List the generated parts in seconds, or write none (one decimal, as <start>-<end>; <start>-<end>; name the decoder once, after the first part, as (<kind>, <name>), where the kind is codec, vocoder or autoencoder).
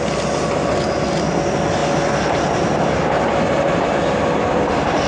none